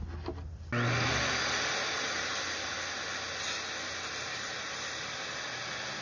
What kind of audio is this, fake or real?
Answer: real